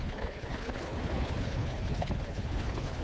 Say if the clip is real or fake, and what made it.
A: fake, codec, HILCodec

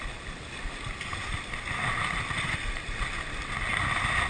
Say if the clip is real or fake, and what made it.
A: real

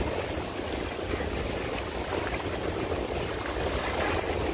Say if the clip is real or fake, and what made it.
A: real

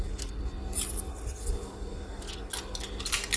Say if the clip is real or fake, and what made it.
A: real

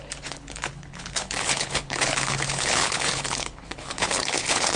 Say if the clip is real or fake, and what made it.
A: fake, codec, HILCodec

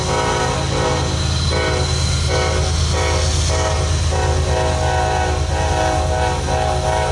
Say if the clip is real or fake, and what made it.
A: real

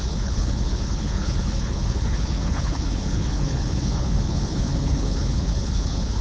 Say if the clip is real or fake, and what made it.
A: fake, codec, HILCodec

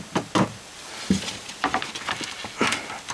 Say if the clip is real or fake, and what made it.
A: real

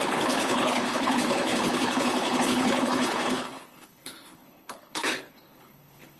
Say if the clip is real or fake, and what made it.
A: fake, codec, HILCodec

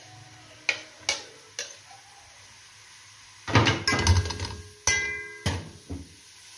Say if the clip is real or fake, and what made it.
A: real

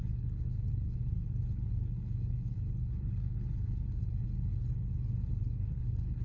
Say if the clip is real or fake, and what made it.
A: fake, codec, HILCodec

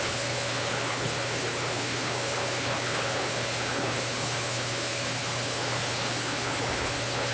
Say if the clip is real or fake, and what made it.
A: fake, codec, HILCodec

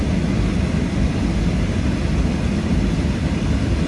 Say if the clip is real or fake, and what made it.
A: real